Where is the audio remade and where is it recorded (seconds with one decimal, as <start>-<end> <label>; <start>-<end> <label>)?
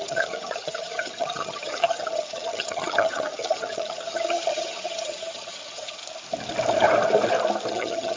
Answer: 0.0-6.0 remade; 6.0-7.7 recorded; 7.7-8.2 remade